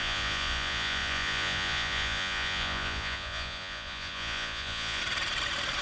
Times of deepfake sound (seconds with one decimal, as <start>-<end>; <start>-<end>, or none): 0.0-5.0